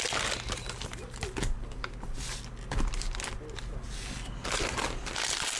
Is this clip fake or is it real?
real